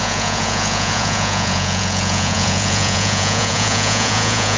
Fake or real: fake